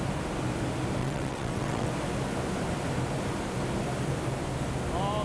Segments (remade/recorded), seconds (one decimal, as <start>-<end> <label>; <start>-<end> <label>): 0.0-1.0 recorded; 1.0-1.9 remade; 1.9-5.2 recorded